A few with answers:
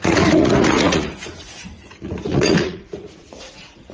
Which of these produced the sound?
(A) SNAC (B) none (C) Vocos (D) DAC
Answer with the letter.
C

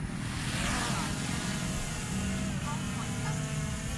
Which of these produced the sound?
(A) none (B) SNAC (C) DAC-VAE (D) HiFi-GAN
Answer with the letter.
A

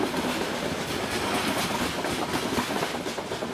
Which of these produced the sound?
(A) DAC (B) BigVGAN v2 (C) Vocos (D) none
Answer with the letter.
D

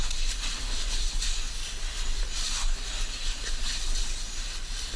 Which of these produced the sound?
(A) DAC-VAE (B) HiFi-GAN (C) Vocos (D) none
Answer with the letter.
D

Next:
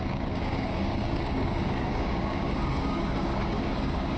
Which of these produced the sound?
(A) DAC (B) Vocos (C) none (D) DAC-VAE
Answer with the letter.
A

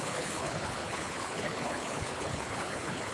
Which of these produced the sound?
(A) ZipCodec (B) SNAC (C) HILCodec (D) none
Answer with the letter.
C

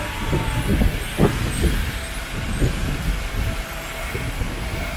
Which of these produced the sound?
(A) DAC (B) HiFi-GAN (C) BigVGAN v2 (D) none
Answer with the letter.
D